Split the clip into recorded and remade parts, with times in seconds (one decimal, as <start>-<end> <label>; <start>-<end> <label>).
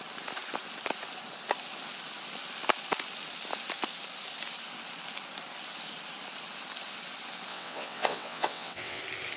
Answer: 0.0-7.5 recorded; 7.5-9.0 remade; 9.0-9.4 recorded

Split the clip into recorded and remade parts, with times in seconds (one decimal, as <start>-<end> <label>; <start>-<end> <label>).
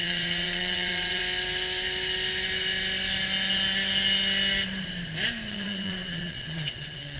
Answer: 0.0-1.2 remade; 1.2-5.5 recorded; 5.5-7.2 remade